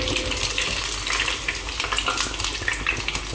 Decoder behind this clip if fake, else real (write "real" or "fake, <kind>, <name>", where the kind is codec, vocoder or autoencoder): real